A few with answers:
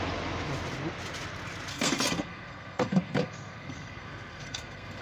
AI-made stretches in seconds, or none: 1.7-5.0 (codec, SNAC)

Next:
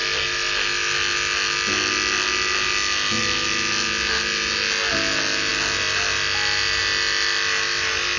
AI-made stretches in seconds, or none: none